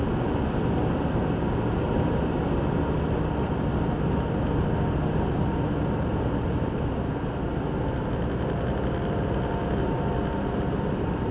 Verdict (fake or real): real